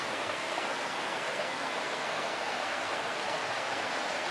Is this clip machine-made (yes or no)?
yes